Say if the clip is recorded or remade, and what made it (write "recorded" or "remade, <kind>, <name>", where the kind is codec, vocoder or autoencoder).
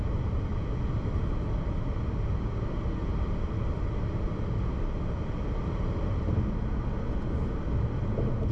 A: recorded